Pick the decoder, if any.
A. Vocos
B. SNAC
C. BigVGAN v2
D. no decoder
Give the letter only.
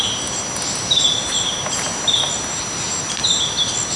D